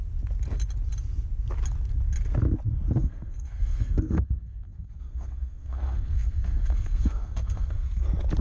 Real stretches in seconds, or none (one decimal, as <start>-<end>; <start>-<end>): 0.0-3.0; 8.0-8.4